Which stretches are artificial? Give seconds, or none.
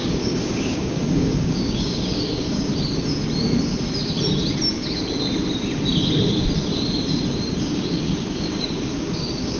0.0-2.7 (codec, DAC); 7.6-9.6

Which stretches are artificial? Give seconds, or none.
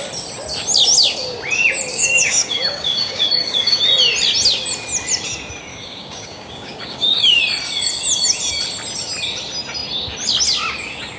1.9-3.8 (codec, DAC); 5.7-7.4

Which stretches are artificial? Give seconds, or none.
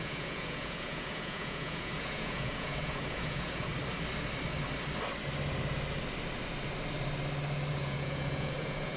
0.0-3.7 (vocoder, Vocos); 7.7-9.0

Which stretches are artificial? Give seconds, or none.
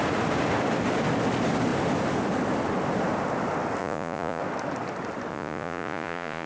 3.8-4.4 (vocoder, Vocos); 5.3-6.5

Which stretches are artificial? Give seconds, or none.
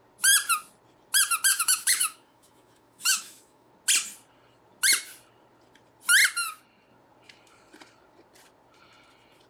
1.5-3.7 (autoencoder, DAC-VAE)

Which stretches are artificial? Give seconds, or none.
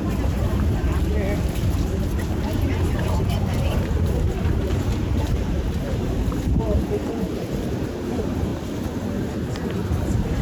0.0-0.8 (vocoder, BigVGAN v2); 3.7-8.5; 10.0-10.4